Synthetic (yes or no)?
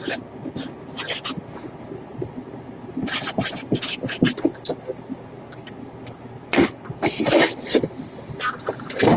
no